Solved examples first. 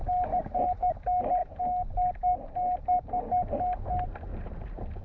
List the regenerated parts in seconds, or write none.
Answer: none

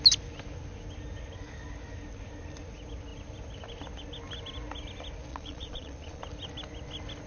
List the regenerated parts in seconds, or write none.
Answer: 5.3-6.2 (vocoder, Vocos)

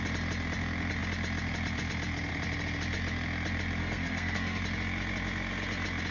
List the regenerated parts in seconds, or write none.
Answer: 3.8-4.6 (codec, SNAC)

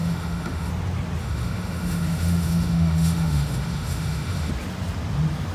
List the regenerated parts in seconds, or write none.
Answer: 0.0-0.7 (autoencoder, DAC-VAE); 1.2-4.5

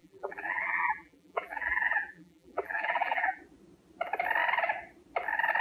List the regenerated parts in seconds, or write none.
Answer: 0.0-3.4 (vocoder, BigVGAN v2)

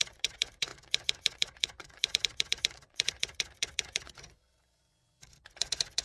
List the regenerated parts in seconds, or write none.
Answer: 0.0-6.0 (vocoder, Vocos)